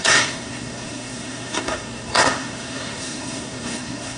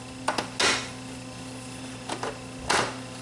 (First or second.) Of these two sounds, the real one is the second